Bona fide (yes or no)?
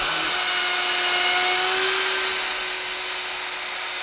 yes